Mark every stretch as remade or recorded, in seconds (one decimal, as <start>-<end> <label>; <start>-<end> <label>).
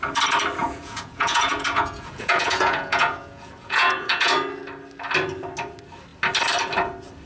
0.0-0.6 recorded; 0.6-4.3 remade; 4.3-7.3 recorded